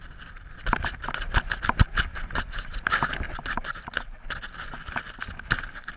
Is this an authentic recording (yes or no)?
yes